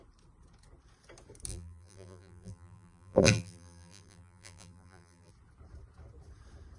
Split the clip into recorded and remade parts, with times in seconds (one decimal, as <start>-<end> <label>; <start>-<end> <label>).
0.0-1.5 recorded; 1.5-5.3 remade; 5.3-6.8 recorded

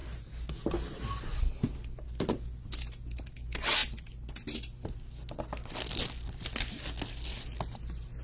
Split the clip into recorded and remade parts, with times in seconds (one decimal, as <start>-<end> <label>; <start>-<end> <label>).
0.0-8.2 recorded

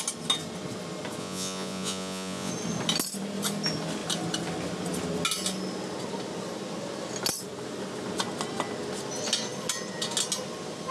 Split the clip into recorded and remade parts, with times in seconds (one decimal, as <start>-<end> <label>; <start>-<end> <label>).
0.0-1.2 recorded; 1.2-2.5 remade; 2.5-10.9 recorded

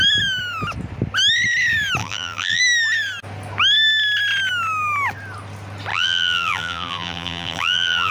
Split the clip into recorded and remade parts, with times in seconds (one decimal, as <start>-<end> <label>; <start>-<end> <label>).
0.0-2.0 recorded; 2.0-2.6 remade; 2.6-5.9 recorded; 5.9-8.1 remade

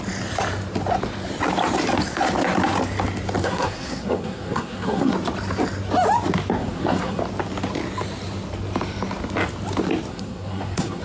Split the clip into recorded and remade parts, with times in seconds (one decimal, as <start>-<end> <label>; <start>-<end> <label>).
0.0-3.4 recorded; 3.4-5.1 remade; 5.1-6.6 recorded; 6.6-7.2 remade; 7.2-10.1 recorded; 10.1-11.0 remade

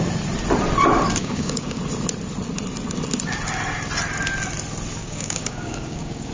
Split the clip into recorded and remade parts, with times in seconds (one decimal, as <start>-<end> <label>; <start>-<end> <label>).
0.0-1.2 recorded; 1.2-1.8 remade; 1.8-5.0 recorded; 5.0-6.3 remade

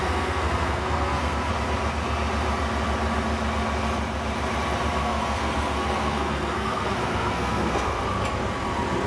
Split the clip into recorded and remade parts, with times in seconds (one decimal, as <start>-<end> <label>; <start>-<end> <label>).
0.0-1.5 remade; 1.5-5.0 recorded; 5.0-8.0 remade; 8.0-9.1 recorded